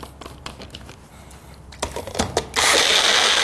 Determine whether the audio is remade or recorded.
recorded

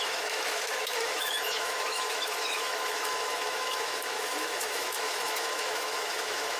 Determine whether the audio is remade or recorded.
remade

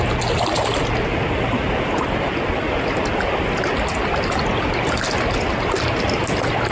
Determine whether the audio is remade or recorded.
recorded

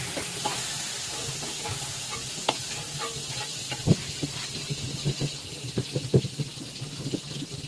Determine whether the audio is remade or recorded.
recorded